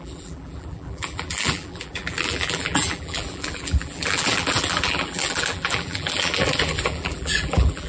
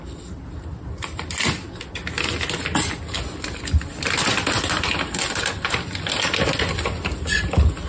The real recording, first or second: second